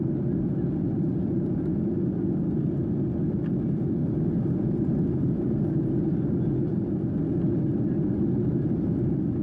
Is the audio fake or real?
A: real